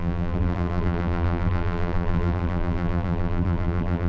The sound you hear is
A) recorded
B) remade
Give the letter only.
B